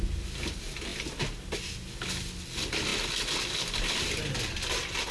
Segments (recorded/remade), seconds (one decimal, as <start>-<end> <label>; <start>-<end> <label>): 0.0-5.1 recorded